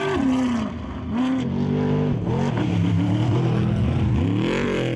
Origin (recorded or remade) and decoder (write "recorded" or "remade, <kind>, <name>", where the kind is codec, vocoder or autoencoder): recorded